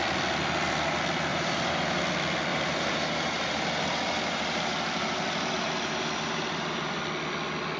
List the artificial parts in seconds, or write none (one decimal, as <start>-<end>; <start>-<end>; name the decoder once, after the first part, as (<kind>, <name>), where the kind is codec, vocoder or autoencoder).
1.3-2.0 (vocoder, BigVGAN v2); 2.5-7.0